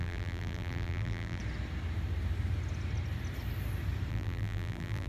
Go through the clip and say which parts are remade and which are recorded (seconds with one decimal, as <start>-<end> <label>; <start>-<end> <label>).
0.0-1.4 remade; 1.4-4.1 recorded; 4.1-5.1 remade